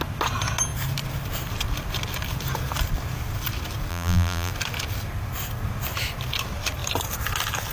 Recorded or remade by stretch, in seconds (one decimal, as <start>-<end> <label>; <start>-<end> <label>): 0.0-3.9 recorded; 3.9-4.5 remade; 4.5-7.7 recorded